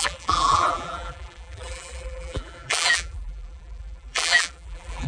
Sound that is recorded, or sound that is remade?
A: remade